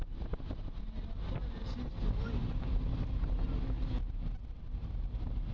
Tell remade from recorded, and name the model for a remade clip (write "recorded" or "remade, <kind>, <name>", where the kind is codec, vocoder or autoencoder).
recorded